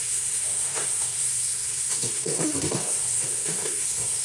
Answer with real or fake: fake